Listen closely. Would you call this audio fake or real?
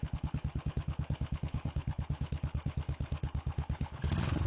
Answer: fake